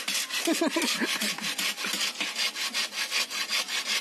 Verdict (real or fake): real